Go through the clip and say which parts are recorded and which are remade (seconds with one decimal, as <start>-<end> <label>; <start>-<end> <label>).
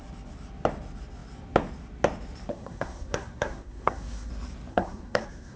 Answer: 0.0-2.5 recorded; 2.5-4.3 remade; 4.3-4.7 recorded; 4.7-5.6 remade